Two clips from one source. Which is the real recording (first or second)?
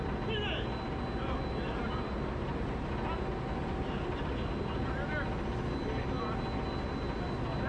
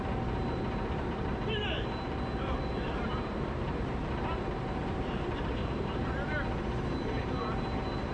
first